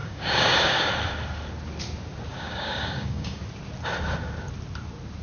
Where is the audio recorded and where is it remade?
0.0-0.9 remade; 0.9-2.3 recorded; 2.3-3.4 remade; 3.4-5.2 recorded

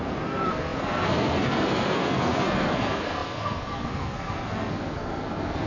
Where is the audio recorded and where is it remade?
0.0-5.7 remade

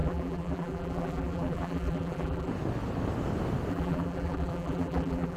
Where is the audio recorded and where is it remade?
0.0-2.5 remade; 2.5-3.7 recorded; 3.7-5.4 remade

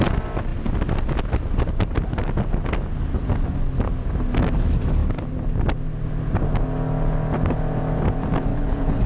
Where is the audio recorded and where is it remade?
0.0-8.5 recorded; 8.5-9.1 remade